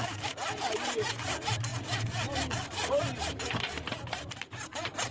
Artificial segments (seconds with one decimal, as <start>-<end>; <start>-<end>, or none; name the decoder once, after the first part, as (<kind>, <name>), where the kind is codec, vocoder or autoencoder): 0.0-5.1 (vocoder, BigVGAN v2)